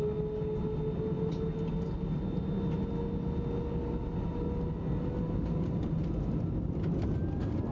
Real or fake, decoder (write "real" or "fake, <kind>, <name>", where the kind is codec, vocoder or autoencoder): real